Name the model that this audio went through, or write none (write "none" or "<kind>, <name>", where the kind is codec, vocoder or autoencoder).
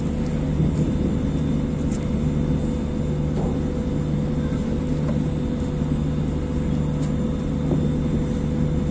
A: none